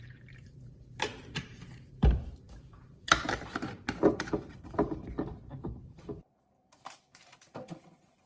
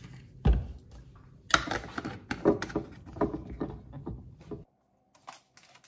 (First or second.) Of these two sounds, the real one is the second